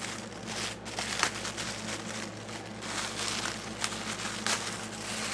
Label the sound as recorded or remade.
recorded